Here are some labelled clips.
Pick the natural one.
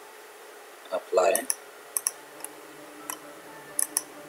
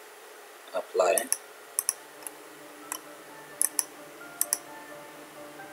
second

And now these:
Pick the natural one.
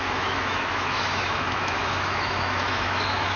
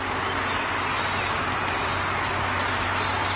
second